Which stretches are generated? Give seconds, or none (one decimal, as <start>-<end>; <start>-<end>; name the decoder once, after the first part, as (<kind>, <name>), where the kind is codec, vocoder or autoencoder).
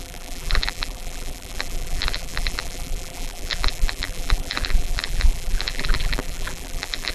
0.0-7.1 (vocoder, BigVGAN v2)